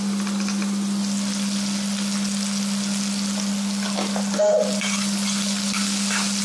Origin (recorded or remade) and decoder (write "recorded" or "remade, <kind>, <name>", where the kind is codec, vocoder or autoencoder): recorded